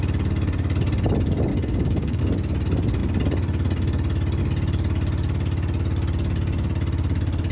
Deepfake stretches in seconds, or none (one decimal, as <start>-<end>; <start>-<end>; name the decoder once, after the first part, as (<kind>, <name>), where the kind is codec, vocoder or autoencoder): 1.5-2.2 (codec, DAC)